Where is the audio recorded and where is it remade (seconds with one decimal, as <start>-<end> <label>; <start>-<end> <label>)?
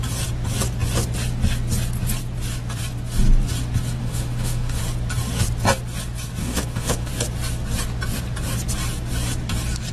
0.0-4.0 recorded; 4.0-4.8 remade; 4.8-6.4 recorded; 6.4-7.1 remade; 7.1-9.9 recorded